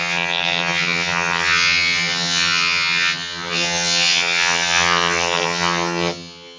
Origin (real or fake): fake